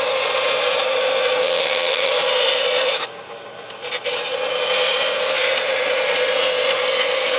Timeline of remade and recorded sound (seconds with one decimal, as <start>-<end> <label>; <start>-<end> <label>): 0.0-1.4 recorded; 1.4-2.1 remade; 2.1-7.4 recorded